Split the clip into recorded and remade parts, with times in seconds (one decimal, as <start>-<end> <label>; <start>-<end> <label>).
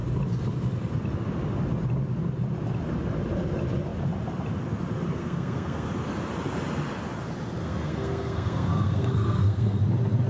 0.0-5.2 recorded; 5.2-5.9 remade; 5.9-7.6 recorded; 7.6-9.8 remade; 9.8-10.3 recorded